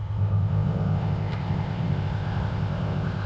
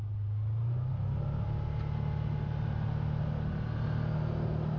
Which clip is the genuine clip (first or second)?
second